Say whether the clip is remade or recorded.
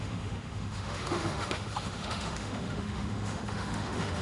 remade